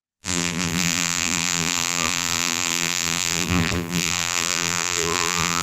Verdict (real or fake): fake